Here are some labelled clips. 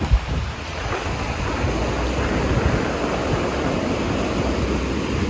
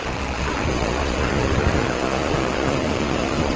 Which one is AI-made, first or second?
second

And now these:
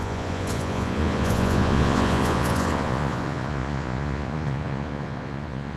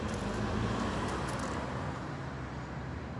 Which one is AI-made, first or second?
first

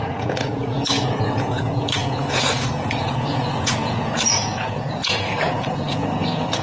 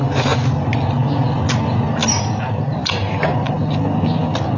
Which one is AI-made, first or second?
first